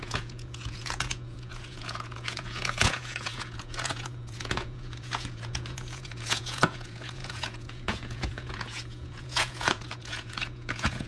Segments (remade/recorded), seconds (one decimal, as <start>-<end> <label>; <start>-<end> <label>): 0.0-11.1 remade